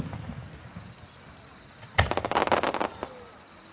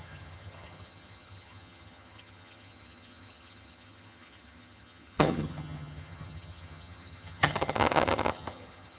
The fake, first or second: second